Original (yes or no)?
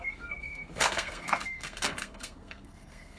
no